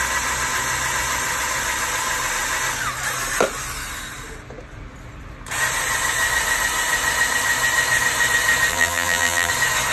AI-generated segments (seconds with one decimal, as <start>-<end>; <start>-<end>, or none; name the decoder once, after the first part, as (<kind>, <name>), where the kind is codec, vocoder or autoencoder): 8.7-9.5 (vocoder, BigVGAN v2)